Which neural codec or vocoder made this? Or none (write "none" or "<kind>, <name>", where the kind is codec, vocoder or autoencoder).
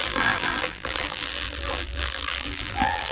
vocoder, BigVGAN v2